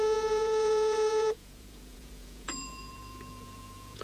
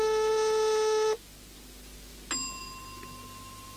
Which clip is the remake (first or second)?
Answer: first